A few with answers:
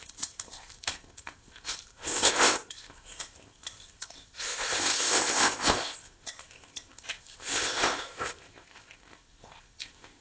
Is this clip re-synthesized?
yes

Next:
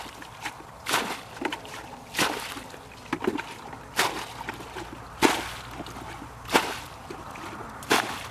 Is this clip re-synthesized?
no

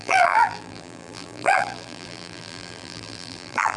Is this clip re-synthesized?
yes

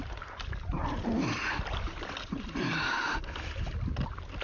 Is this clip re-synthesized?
no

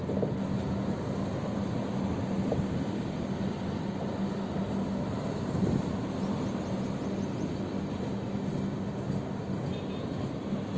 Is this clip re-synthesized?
no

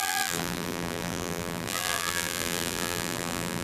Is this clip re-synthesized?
yes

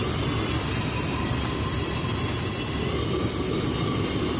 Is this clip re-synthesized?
no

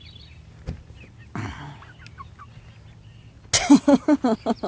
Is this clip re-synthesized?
no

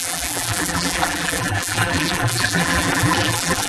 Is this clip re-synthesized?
yes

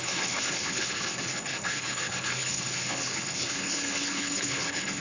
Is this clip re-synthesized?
yes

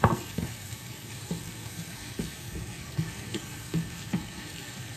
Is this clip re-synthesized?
yes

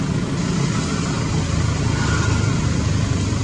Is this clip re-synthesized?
no